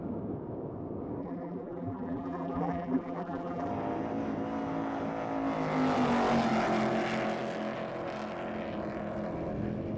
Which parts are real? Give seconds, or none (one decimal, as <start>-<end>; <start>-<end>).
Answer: 0.0-1.2; 3.7-10.0